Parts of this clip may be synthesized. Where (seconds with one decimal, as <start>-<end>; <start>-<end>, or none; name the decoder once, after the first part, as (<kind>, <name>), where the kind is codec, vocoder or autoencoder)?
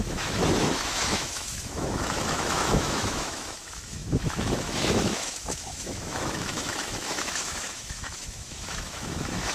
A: 0.0-9.5 (autoencoder, DAC-VAE)